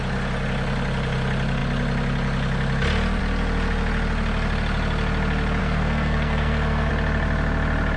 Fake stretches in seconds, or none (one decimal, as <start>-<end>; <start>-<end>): 5.6-6.9

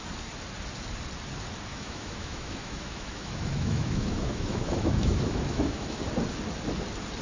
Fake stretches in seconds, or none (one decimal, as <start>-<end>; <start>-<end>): 1.7-6.0